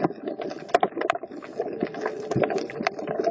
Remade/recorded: recorded